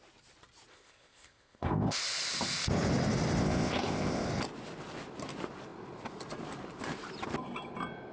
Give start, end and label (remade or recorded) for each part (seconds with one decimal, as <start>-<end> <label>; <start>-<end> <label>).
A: 0.0-0.7 recorded; 0.7-2.0 remade; 2.0-3.4 recorded; 3.4-4.3 remade; 4.3-8.1 recorded